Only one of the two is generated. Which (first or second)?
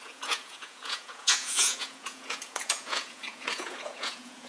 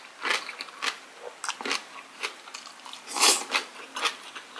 first